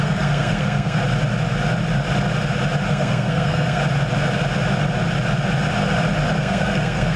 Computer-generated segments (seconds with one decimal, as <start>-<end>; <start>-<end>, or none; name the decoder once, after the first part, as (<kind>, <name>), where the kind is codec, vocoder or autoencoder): 0.0-1.0 (codec, SNAC); 2.9-3.8; 6.4-7.2